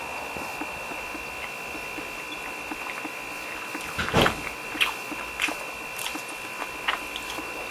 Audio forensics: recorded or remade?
recorded